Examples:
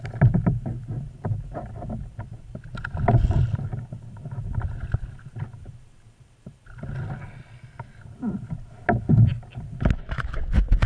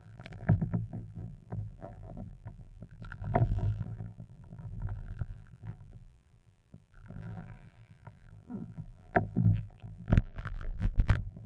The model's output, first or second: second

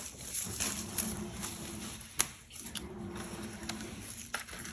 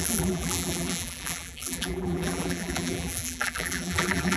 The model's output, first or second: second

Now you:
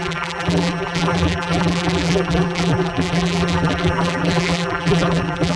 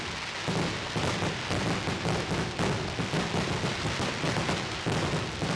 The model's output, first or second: first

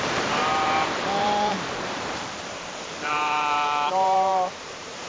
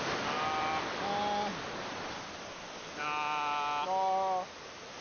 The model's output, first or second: first